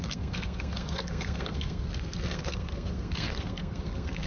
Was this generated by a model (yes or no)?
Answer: yes